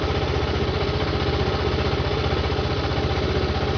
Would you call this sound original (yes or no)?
yes